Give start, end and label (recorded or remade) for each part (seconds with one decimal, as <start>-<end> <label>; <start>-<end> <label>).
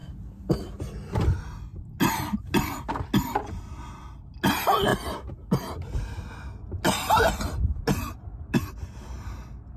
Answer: 0.0-9.8 recorded